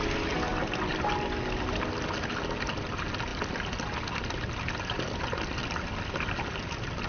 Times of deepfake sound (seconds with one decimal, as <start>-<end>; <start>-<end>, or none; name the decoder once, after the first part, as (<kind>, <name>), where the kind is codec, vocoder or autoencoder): none